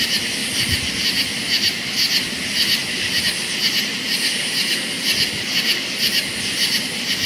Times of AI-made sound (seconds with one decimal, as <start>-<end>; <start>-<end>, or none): none

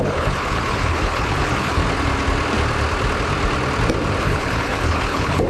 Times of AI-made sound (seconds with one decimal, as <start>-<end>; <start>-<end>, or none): 0.0-1.8; 4.2-5.5

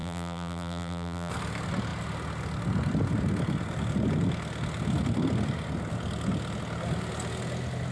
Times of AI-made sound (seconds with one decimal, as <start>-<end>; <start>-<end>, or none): 0.0-1.3

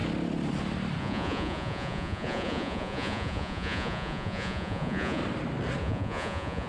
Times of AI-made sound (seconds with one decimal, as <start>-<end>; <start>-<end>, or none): 1.0-5.2; 5.8-6.7

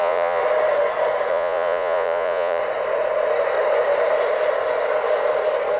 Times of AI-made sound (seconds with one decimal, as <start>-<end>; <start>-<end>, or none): 0.0-0.4; 1.3-2.6

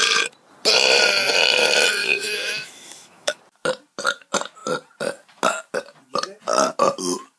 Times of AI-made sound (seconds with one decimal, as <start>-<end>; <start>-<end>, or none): 2.0-3.4